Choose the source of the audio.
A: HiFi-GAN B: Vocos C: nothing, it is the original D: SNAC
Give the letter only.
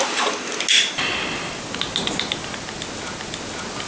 C